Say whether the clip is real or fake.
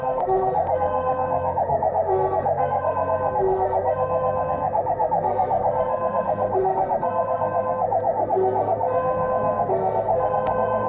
fake